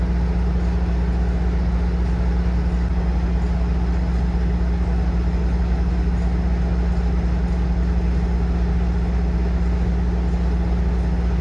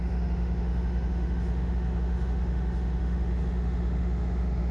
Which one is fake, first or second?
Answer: second